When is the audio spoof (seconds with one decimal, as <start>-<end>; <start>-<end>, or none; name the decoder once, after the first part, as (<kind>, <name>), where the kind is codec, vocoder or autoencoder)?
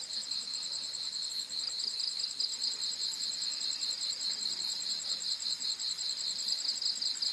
0.5-1.3 (vocoder, BigVGAN v2); 2.5-6.7